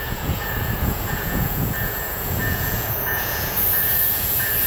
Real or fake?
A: fake